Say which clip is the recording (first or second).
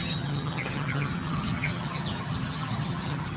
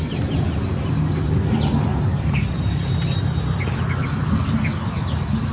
second